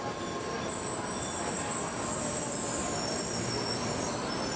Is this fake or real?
real